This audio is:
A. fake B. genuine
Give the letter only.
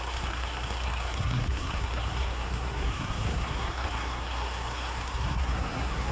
A